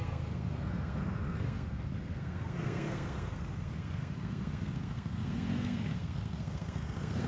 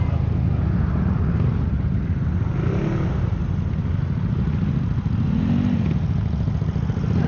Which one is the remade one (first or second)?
first